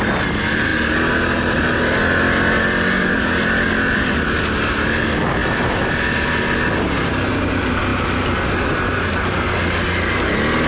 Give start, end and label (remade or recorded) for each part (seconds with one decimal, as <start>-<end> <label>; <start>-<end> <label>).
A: 0.0-10.7 recorded